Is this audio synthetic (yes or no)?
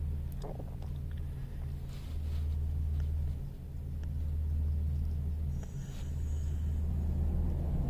no